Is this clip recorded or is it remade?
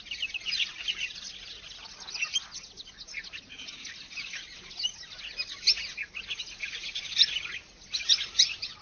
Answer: recorded